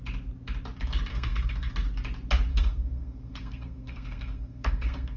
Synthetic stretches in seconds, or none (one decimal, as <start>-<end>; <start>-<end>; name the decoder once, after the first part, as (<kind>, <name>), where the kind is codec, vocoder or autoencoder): 1.1-1.7 (codec, SNAC); 2.5-5.2